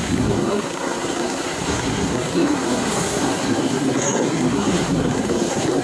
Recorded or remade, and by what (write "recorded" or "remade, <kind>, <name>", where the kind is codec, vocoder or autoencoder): remade, codec, SNAC